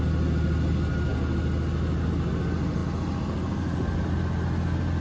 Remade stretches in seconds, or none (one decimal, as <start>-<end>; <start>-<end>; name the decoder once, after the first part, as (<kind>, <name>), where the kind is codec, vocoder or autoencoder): none